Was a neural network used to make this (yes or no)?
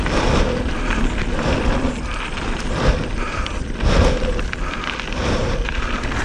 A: yes